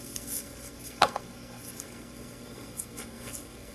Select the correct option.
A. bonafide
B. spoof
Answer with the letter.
B